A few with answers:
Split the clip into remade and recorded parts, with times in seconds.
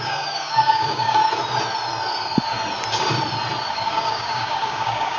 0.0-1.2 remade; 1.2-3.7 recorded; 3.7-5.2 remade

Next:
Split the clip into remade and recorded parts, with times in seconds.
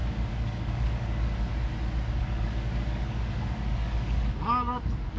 0.0-1.5 remade; 1.5-2.2 recorded; 2.2-5.2 remade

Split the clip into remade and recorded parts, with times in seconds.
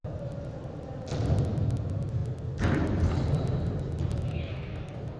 0.0-4.3 recorded; 4.3-5.2 remade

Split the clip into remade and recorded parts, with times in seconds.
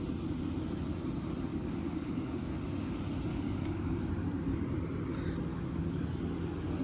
0.0-1.5 recorded; 1.5-2.5 remade; 2.5-3.3 recorded; 3.3-4.1 remade; 4.1-5.5 recorded; 5.5-6.2 remade; 6.2-6.8 recorded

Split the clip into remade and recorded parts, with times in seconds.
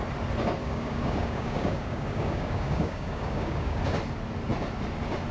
0.0-0.6 recorded; 0.6-3.8 remade; 3.8-5.3 recorded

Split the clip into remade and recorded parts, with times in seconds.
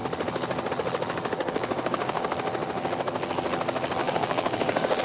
0.0-1.4 recorded; 1.4-2.3 remade; 2.3-4.0 recorded; 4.0-5.0 remade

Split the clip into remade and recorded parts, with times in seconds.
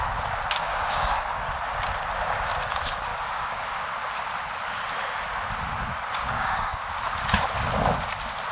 0.0-0.7 recorded; 0.7-1.5 remade; 1.5-3.1 recorded; 3.1-3.7 remade; 3.7-6.2 recorded; 6.2-6.8 remade; 6.8-8.5 recorded